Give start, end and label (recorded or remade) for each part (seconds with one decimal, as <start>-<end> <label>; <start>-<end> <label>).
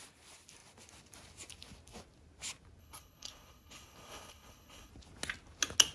0.0-2.8 recorded; 2.8-4.9 remade; 4.9-5.9 recorded